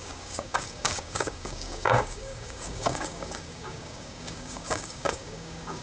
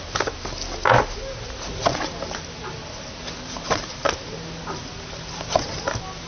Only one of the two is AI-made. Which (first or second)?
first